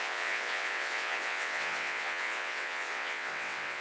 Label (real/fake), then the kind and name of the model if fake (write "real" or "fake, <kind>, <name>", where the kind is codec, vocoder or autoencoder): fake, vocoder, WaveNeXt